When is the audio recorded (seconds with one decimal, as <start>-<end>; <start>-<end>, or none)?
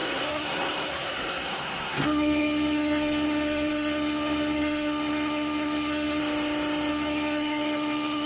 6.2-6.9